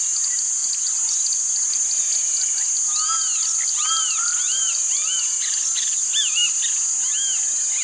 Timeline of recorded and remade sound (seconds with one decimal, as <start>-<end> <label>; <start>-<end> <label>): 0.0-0.6 recorded; 0.6-2.7 remade; 2.7-3.4 recorded; 3.4-6.7 remade; 6.7-7.8 recorded